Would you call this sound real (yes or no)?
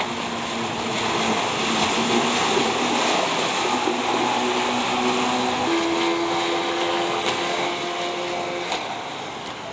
yes